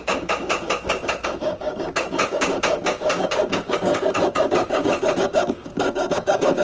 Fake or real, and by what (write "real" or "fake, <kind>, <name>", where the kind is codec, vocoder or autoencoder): fake, codec, DAC